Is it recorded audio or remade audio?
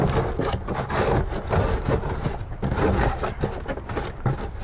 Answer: recorded